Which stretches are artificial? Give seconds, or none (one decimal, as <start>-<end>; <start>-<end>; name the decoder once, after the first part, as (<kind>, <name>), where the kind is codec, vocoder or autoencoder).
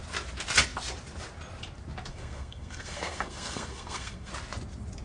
2.1-4.3 (codec, SNAC)